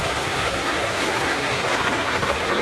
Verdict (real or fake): fake